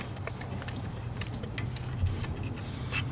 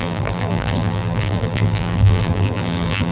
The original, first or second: first